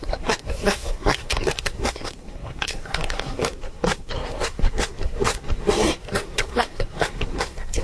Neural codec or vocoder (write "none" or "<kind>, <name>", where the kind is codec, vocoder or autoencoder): codec, SNAC